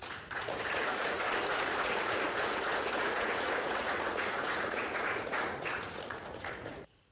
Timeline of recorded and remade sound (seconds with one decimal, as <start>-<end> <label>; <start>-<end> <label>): 0.0-7.1 remade